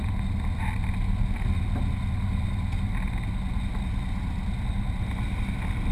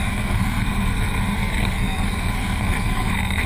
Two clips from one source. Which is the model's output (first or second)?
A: second